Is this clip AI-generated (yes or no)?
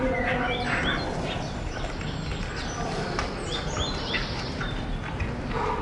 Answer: no